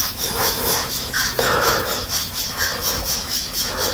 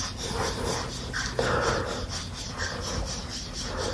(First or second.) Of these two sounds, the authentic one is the second